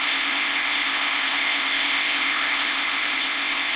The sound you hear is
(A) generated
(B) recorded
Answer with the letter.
A